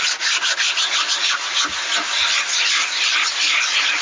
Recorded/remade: recorded